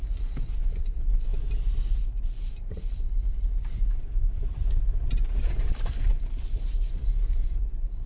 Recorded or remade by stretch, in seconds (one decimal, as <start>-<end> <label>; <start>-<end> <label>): 0.0-1.3 remade; 1.3-1.9 recorded; 1.9-3.3 remade; 3.3-5.4 recorded; 5.4-8.1 remade